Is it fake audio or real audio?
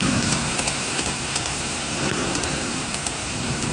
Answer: fake